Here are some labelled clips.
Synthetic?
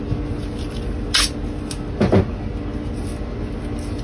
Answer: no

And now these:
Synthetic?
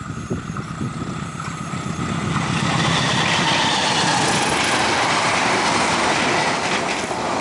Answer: no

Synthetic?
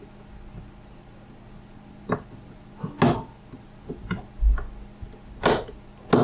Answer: no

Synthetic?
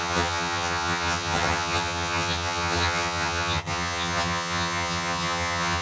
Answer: yes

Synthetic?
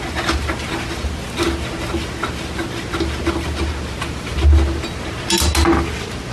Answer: no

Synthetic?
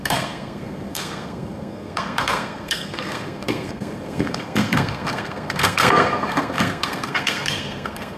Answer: yes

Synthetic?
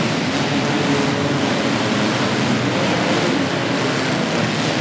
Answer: no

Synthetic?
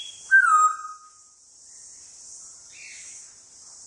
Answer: no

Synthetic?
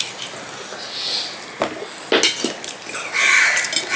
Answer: no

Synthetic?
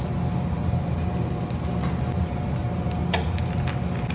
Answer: no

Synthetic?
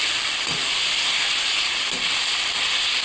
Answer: no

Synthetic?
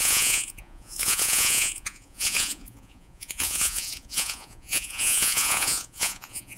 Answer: yes